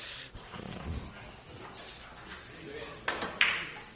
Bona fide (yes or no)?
yes